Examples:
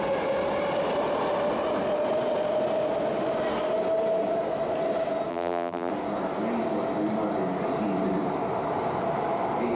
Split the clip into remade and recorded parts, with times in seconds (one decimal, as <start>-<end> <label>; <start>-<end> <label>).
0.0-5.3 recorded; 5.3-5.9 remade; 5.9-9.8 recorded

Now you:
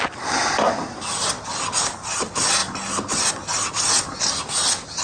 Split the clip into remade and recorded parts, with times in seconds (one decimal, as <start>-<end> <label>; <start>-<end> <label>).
0.0-5.0 recorded

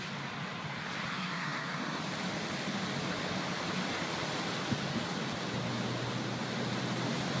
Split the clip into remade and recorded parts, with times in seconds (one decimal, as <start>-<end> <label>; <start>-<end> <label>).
0.0-1.1 recorded; 1.1-2.0 remade; 2.0-7.4 recorded

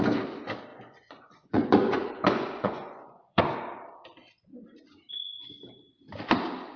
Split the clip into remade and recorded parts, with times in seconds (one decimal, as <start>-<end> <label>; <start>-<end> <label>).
0.0-0.7 recorded; 0.7-3.4 remade; 3.4-6.8 recorded

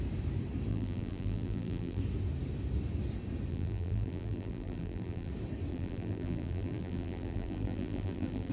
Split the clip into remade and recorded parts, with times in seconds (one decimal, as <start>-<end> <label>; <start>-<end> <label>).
0.0-0.7 recorded; 0.7-2.0 remade; 2.0-3.5 recorded; 3.5-5.3 remade; 5.3-5.7 recorded; 5.7-8.5 remade

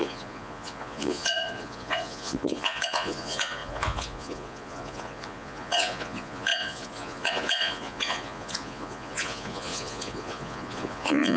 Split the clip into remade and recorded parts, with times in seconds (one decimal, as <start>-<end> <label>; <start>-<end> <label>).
0.0-11.4 remade

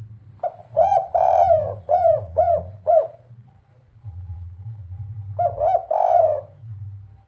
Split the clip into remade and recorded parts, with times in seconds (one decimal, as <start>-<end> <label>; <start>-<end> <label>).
0.0-0.6 recorded; 0.6-5.0 remade; 5.0-7.3 recorded

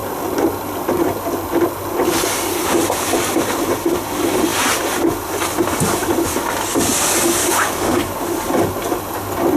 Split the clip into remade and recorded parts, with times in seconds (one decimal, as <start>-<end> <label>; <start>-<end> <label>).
0.0-7.4 recorded; 7.4-8.1 remade; 8.1-9.6 recorded